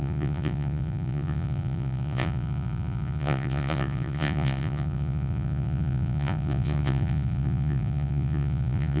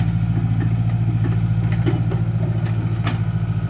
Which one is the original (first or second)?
second